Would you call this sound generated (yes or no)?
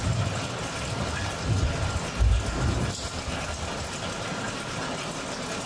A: no